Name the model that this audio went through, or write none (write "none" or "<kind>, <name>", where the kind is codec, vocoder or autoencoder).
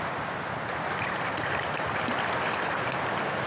none